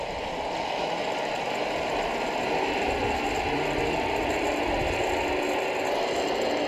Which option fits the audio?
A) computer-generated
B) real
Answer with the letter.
B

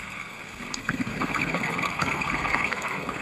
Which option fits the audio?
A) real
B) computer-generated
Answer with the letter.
B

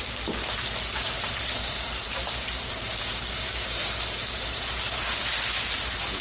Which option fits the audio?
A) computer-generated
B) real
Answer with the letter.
A